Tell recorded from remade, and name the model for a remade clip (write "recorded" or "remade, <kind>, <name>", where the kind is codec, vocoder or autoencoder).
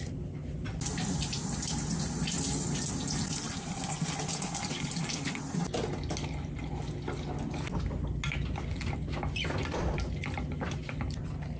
recorded